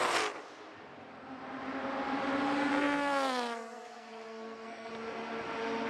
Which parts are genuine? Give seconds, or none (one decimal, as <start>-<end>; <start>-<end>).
0.0-2.7; 4.9-5.9